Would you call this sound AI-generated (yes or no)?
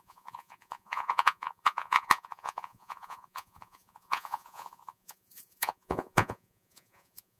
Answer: yes